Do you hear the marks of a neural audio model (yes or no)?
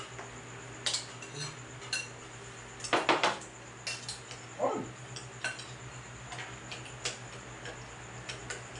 no